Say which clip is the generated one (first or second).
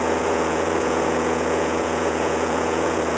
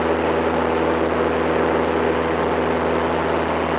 first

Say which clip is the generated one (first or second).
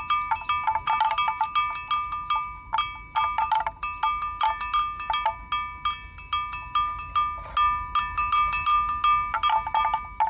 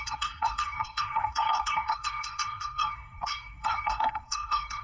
second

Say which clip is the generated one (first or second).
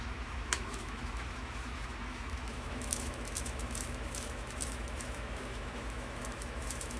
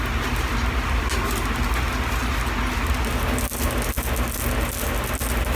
first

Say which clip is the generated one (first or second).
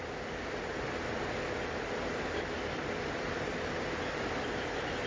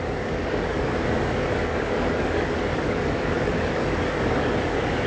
second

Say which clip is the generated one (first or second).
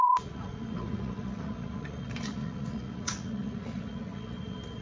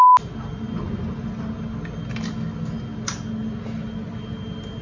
first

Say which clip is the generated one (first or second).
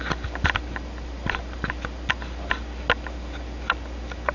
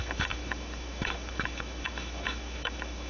second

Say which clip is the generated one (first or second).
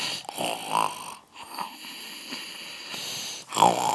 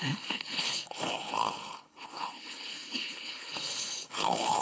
second